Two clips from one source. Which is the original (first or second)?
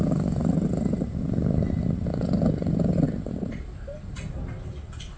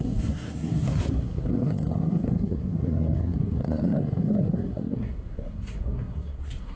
first